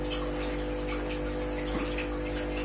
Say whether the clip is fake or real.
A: real